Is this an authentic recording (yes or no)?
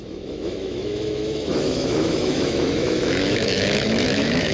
no